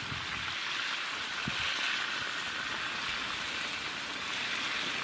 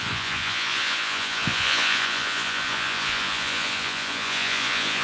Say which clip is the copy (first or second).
second